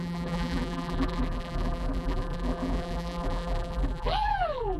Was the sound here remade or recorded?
remade